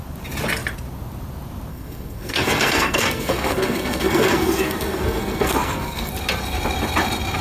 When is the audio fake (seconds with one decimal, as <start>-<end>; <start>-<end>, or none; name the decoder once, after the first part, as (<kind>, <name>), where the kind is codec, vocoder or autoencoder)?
1.7-6.1 (codec, SNAC)